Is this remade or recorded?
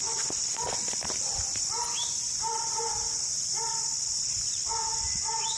recorded